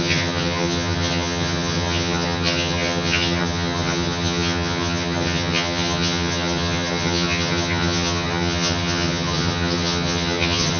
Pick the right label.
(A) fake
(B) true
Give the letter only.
A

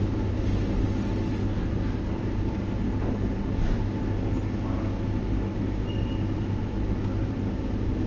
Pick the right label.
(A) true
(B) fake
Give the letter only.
A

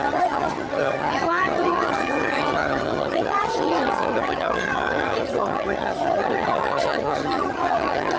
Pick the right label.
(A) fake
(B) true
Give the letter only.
A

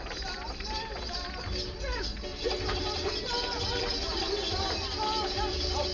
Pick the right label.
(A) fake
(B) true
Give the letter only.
B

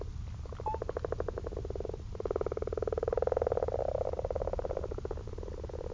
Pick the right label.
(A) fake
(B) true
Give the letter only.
B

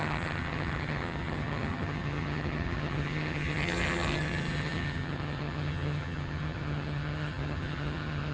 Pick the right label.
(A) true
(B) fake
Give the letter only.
B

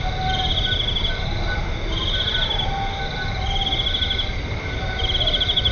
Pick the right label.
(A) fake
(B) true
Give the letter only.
B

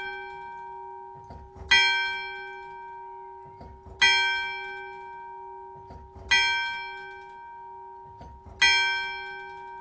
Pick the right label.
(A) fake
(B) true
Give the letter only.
B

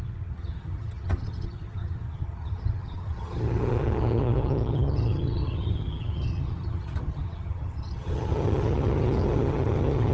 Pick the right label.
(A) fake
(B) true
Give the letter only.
A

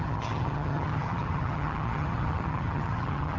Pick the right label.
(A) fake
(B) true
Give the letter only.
A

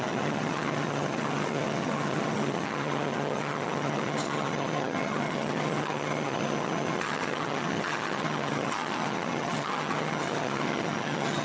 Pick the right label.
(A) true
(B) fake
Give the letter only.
B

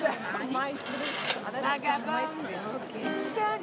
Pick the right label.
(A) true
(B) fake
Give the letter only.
A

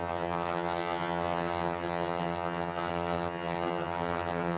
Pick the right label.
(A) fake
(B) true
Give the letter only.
A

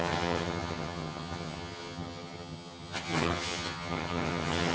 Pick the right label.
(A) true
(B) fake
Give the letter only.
B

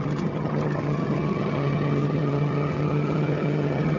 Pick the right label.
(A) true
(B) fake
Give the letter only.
B